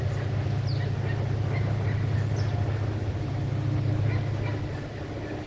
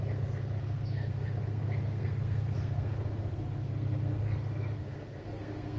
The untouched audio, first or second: first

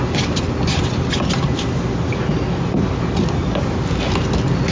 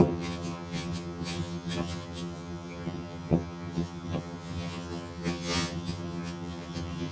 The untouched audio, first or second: first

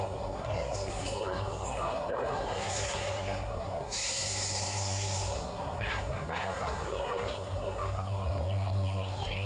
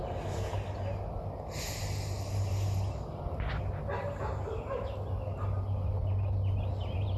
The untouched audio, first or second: second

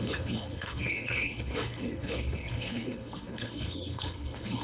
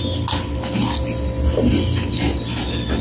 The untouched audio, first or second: second